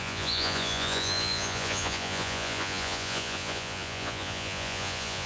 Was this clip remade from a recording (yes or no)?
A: yes